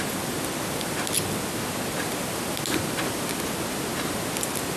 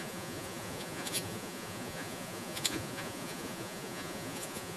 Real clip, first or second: first